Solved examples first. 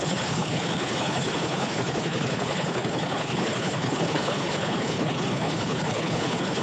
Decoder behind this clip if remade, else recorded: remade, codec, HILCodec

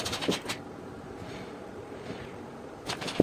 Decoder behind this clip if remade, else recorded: remade, vocoder, BigVGAN v2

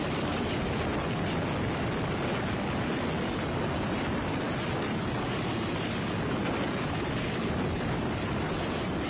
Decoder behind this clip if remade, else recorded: recorded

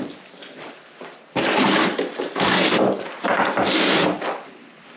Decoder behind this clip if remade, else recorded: recorded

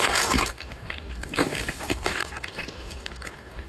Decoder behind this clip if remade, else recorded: remade, codec, DAC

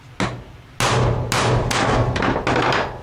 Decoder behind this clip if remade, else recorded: recorded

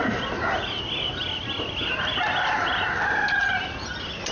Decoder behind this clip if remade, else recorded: recorded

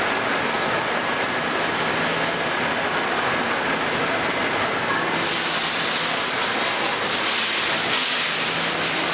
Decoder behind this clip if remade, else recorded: recorded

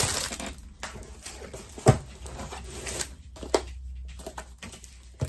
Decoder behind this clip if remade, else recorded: recorded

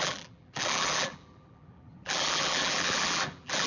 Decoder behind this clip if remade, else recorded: remade, vocoder, BigVGAN v2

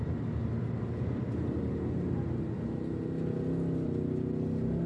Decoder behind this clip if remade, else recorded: recorded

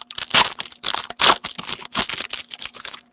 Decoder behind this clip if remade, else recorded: recorded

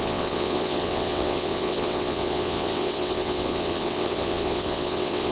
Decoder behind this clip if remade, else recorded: remade, vocoder, WaveNeXt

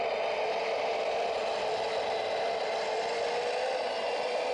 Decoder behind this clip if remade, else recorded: recorded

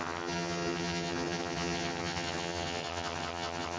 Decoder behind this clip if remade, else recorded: remade, vocoder, HiFi-GAN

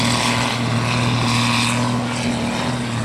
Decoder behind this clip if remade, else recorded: recorded